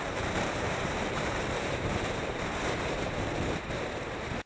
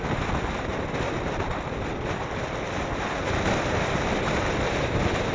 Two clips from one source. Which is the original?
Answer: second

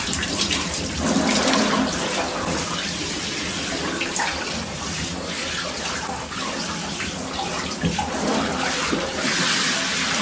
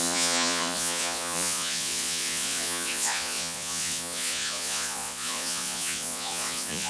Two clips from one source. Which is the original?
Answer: first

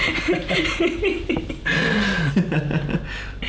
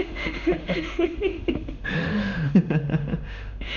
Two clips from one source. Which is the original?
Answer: first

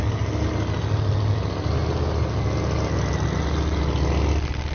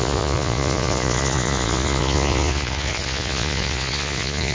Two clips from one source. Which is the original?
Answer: first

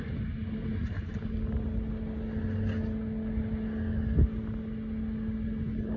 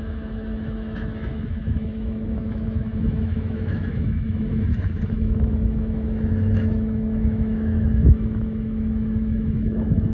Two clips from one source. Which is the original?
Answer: first